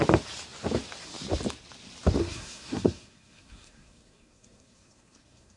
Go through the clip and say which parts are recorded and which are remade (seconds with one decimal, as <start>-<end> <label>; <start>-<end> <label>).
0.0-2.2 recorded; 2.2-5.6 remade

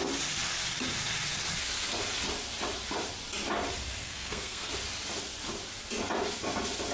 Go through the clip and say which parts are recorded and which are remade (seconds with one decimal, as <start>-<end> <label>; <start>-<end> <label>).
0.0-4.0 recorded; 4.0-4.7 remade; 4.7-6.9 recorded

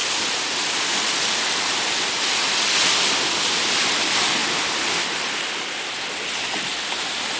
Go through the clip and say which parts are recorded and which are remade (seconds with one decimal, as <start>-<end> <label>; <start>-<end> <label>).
0.0-7.4 recorded

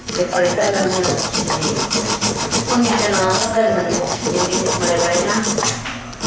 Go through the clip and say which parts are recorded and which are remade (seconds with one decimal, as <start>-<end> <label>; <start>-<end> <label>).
0.0-1.0 remade; 1.0-3.2 recorded; 3.2-4.3 remade; 4.3-6.3 recorded

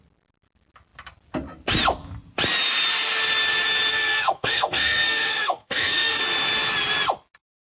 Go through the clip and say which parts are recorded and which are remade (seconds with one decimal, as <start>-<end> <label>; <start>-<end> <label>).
0.0-3.9 recorded; 3.9-6.2 remade; 6.2-7.6 recorded

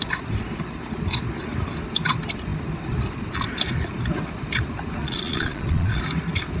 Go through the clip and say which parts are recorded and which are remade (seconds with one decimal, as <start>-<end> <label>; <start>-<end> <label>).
0.0-5.0 recorded; 5.0-6.0 remade; 6.0-6.6 recorded